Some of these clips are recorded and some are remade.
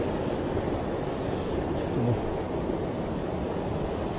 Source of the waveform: recorded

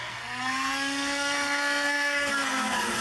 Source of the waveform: remade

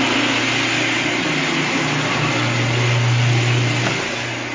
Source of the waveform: recorded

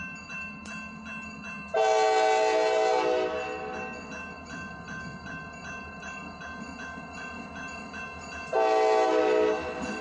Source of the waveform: recorded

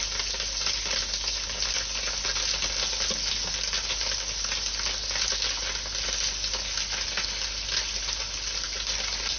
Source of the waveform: recorded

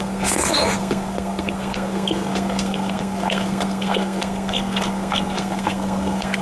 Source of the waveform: remade